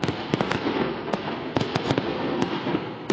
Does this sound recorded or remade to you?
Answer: remade